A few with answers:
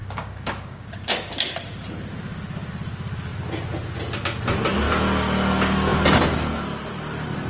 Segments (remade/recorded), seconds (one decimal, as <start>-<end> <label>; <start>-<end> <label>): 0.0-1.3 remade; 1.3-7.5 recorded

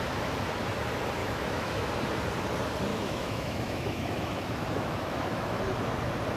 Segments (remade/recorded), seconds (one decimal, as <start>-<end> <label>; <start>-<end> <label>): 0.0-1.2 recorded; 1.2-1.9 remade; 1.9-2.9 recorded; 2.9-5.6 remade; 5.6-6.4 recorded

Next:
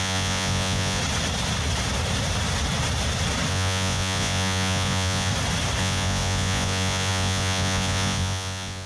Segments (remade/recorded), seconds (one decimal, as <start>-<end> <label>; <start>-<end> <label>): 0.0-1.0 remade; 1.0-3.5 recorded; 3.5-5.3 remade; 5.3-5.8 recorded; 5.8-8.9 remade

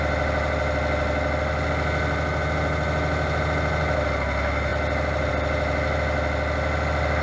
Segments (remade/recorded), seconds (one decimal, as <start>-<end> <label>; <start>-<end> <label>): 0.0-7.2 recorded